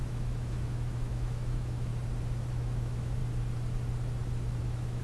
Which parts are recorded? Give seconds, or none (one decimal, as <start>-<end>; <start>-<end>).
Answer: 1.9-2.5; 3.2-4.6